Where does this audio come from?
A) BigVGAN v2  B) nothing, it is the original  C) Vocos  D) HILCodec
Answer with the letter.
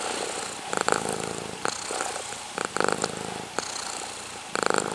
B